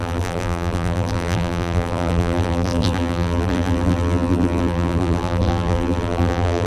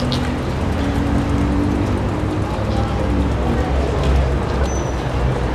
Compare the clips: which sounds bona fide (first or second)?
second